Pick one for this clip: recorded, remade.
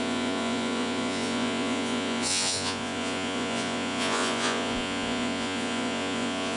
remade